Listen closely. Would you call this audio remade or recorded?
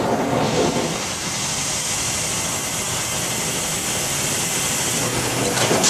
recorded